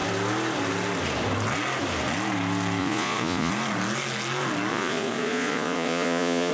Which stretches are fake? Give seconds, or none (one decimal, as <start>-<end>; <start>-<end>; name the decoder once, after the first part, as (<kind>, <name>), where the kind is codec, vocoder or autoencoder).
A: 2.8-3.5 (vocoder, Vocos); 4.7-6.5